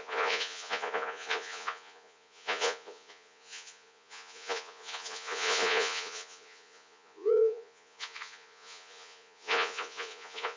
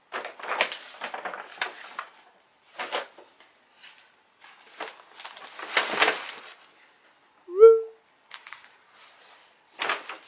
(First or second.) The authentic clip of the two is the second